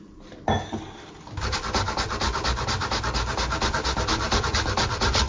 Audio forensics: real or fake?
real